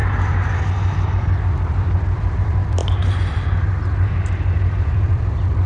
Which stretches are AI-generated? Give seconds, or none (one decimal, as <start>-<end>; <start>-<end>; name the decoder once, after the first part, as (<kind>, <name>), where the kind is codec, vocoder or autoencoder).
1.2-5.7 (vocoder, BigVGAN v2)